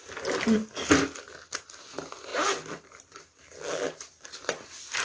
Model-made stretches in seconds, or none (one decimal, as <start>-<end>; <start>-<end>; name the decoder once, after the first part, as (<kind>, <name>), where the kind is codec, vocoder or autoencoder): none